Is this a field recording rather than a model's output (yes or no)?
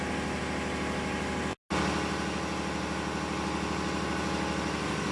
yes